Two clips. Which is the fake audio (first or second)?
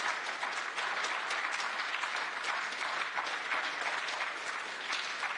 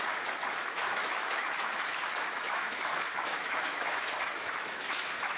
second